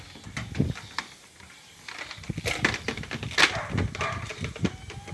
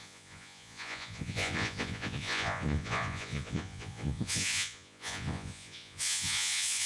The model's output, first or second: second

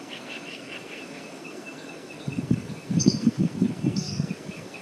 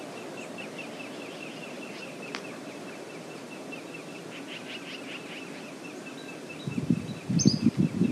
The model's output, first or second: first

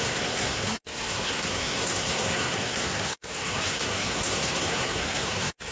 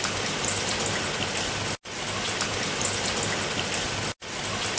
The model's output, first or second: first